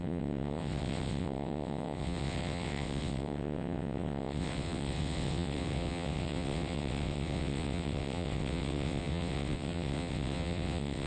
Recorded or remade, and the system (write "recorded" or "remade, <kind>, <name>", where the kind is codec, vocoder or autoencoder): remade, vocoder, WaveNeXt